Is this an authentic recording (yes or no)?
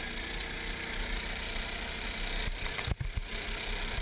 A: yes